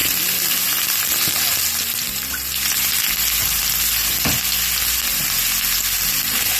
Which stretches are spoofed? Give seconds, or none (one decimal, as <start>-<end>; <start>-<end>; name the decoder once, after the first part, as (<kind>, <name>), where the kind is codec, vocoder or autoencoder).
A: 0.0-3.6 (vocoder, BigVGAN v2)